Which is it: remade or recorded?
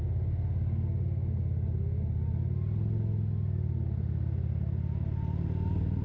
recorded